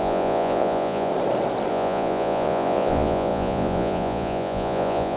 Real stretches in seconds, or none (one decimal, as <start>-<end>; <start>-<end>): 1.1-1.7